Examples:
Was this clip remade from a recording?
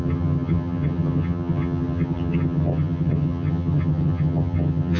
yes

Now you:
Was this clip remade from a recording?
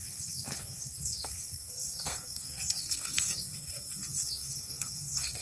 yes